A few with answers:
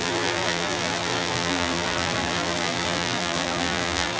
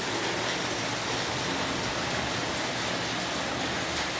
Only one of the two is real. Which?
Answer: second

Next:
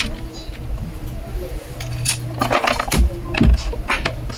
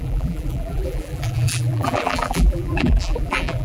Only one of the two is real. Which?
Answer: first